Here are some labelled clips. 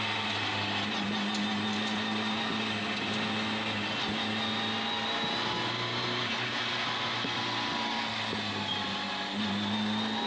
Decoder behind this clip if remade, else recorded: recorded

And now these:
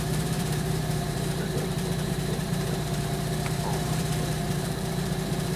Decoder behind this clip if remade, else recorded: remade, vocoder, BigVGAN v2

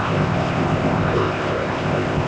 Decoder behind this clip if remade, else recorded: remade, codec, ZipCodec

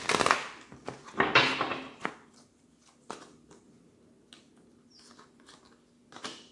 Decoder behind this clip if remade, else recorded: recorded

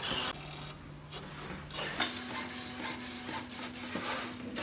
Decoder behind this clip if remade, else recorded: recorded